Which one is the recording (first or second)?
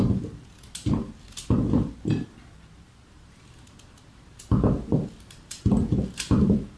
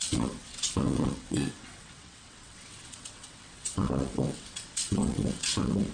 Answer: first